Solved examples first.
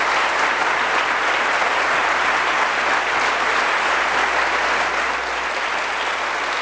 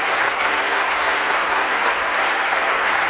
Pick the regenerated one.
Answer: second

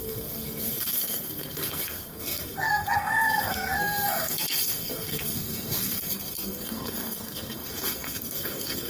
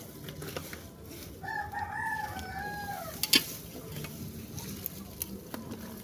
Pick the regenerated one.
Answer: first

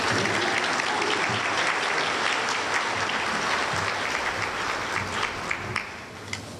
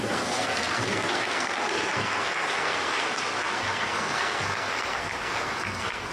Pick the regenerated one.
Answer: second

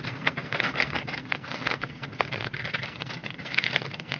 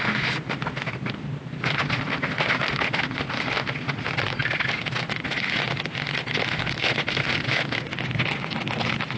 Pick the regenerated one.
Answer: first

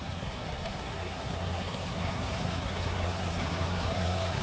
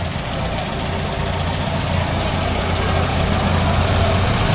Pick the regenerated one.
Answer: first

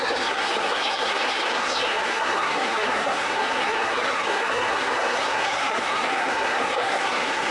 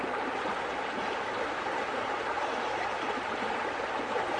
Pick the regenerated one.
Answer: first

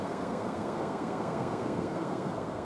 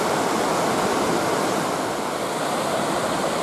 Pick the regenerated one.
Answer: first